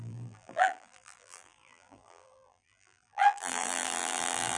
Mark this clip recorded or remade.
remade